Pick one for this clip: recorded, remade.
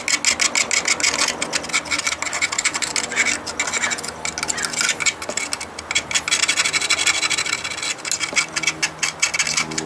recorded